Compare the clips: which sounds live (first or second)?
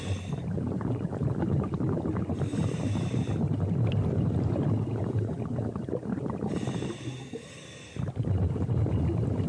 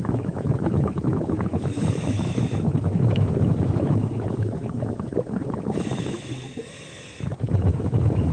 first